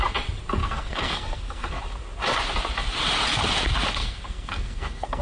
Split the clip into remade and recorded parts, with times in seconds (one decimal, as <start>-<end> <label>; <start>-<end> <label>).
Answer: 0.0-0.6 recorded; 0.6-1.8 remade; 1.8-4.0 recorded; 4.0-5.2 remade